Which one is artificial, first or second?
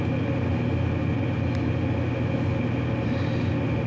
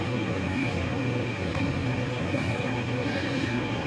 second